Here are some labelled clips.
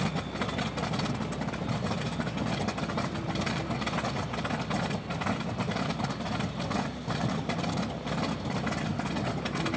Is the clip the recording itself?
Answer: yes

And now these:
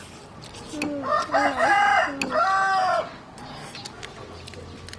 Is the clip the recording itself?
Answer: yes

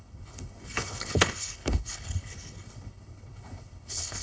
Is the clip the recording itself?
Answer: no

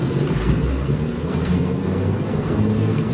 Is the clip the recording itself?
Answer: no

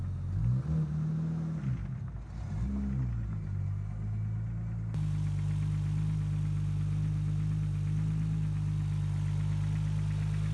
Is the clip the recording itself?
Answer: yes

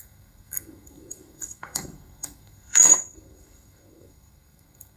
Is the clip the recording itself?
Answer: no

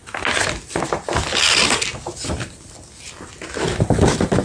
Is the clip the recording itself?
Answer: yes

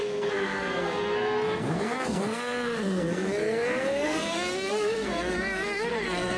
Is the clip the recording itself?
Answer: no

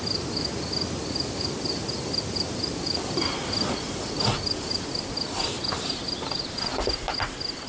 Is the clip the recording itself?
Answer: yes